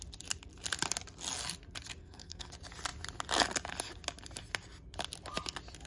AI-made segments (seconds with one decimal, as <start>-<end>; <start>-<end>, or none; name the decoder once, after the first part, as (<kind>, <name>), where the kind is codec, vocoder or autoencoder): 2.0-2.5 (codec, SNAC)